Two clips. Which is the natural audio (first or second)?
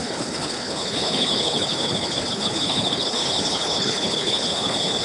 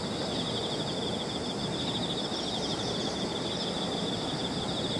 second